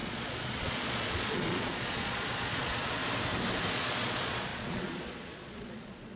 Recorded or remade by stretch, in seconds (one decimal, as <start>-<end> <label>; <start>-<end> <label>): 0.0-3.0 remade; 3.0-3.7 recorded; 3.7-6.2 remade

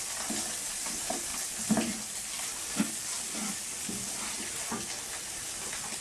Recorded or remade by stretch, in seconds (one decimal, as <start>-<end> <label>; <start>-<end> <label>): 0.0-6.0 recorded

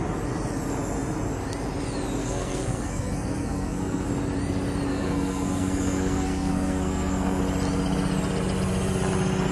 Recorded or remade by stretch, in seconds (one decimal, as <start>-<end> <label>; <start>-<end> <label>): 0.0-2.2 recorded; 2.2-4.1 remade; 4.1-4.9 recorded; 4.9-7.4 remade; 7.4-9.5 recorded

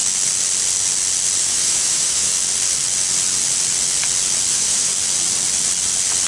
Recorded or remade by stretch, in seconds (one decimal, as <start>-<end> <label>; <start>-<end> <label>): 0.0-1.4 recorded; 1.4-2.3 remade; 2.3-4.5 recorded; 4.5-4.9 remade; 4.9-6.3 recorded